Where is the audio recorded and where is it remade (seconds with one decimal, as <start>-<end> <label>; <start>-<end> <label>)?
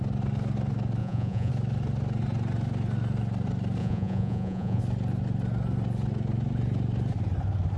0.0-1.0 recorded; 1.0-1.5 remade; 1.5-3.8 recorded; 3.8-4.8 remade; 4.8-7.8 recorded